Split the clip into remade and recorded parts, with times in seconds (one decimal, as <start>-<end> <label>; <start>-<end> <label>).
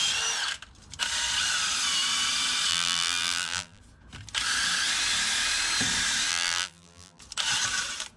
0.0-2.7 recorded; 2.7-3.8 remade; 3.8-6.3 recorded; 6.3-7.2 remade; 7.2-8.2 recorded